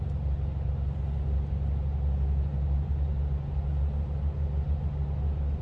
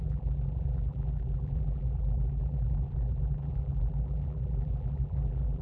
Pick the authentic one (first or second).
first